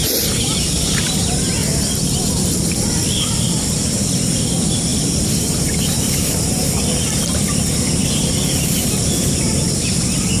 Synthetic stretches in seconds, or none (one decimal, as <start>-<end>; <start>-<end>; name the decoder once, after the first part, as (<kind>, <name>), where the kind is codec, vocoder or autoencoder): 0.0-1.1 (vocoder, BigVGAN v2); 1.6-4.4; 4.9-6.8; 8.0-9.8